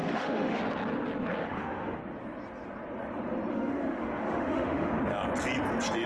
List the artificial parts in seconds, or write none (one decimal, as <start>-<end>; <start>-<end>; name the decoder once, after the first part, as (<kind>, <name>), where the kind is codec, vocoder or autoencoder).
0.0-0.6 (autoencoder, DAC-VAE); 1.4-2.0; 3.5-4.9